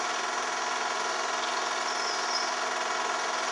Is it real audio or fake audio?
real